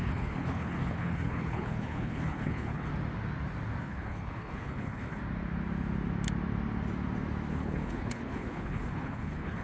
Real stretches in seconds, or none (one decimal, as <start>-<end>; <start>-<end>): 2.9-3.8; 5.2-7.5